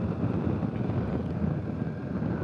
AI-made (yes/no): no